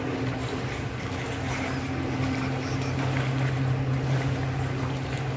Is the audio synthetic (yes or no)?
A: no